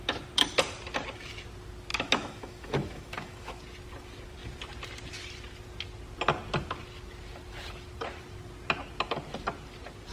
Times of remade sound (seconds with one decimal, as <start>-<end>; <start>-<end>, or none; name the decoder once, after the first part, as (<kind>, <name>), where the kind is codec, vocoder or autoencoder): 1.9-3.6 (autoencoder, DAC-VAE)